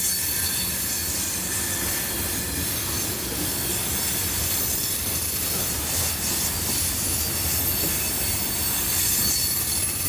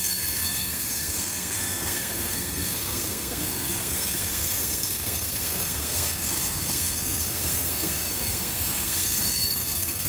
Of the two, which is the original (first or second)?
first